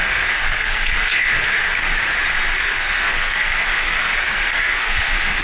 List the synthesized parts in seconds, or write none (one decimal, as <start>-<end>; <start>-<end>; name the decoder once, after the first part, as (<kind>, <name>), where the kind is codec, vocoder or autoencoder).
0.0-1.6 (codec, SNAC); 2.6-5.4